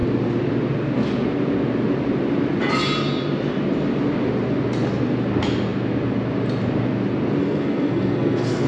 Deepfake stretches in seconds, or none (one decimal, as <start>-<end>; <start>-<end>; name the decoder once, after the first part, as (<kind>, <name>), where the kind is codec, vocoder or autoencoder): 7.4-8.7 (codec, SNAC)